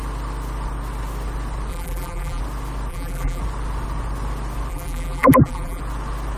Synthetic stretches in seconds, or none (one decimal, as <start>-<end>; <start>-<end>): 1.7-2.4; 2.9-3.4; 4.7-5.8